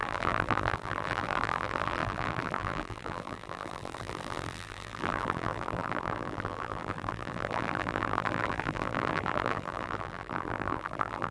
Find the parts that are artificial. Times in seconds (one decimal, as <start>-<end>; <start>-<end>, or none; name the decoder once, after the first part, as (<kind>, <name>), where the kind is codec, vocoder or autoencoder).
0.0-11.3 (vocoder, BigVGAN v2)